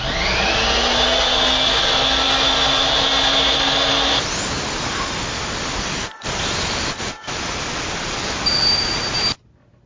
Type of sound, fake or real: real